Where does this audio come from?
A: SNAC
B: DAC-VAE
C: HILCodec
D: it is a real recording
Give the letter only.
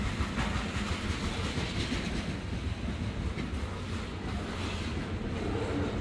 D